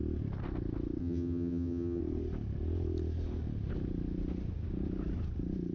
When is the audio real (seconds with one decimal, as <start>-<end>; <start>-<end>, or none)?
0.0-1.0; 2.0-5.7